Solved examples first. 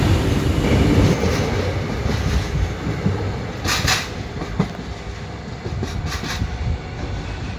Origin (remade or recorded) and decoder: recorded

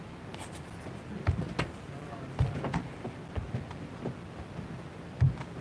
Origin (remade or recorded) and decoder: recorded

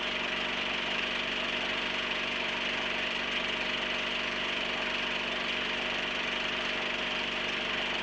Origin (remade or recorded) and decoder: remade, vocoder, BigVGAN v2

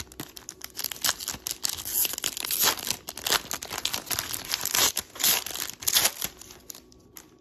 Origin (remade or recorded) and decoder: recorded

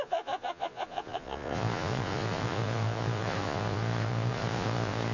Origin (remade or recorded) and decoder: remade, vocoder, Vocos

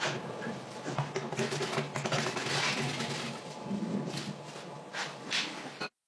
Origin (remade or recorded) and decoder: recorded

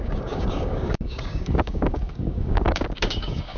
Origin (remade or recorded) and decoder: remade, codec, DAC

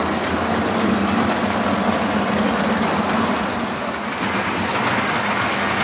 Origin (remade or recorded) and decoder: recorded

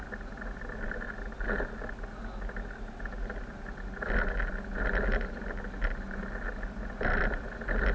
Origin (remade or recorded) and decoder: recorded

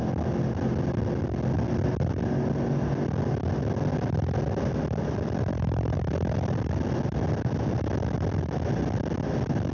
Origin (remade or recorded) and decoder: recorded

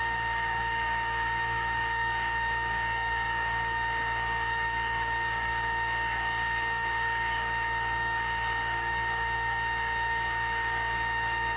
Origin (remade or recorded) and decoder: remade, codec, DAC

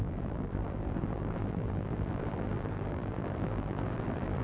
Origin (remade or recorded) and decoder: remade, vocoder, BigVGAN v2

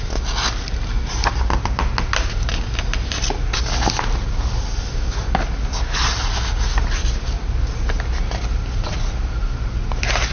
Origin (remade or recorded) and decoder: recorded